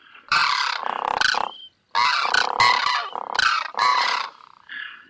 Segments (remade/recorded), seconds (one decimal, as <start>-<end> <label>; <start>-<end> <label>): 0.0-0.4 remade; 0.4-3.5 recorded; 3.5-5.1 remade

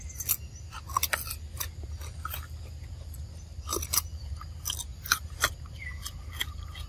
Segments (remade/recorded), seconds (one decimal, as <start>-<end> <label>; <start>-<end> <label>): 0.0-3.5 recorded; 3.5-4.3 remade; 4.3-4.9 recorded; 4.9-5.5 remade; 5.5-6.9 recorded

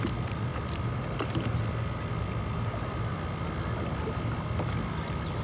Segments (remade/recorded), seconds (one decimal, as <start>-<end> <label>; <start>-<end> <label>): 0.0-5.4 recorded

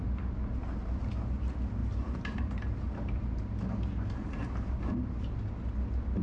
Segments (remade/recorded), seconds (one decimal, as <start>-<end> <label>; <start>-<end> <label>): 0.0-0.6 recorded; 0.6-1.1 remade; 1.1-1.8 recorded; 1.8-5.5 remade; 5.5-6.2 recorded